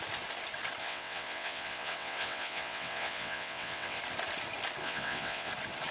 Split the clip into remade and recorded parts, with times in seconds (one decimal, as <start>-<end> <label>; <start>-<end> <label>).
0.0-0.8 recorded; 0.8-4.0 remade; 4.0-4.8 recorded; 4.8-5.5 remade; 5.5-5.9 recorded